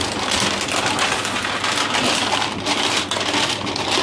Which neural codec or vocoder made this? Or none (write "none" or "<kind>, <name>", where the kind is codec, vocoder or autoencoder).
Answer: none